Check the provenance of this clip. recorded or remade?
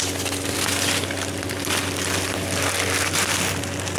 recorded